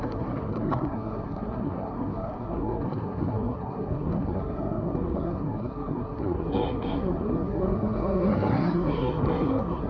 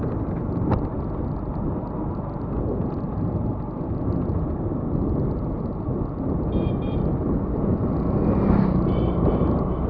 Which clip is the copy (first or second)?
first